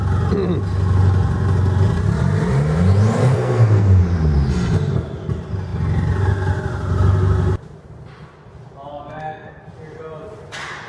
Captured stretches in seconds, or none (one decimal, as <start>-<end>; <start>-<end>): 0.0-3.2; 4.0-8.9; 9.6-10.9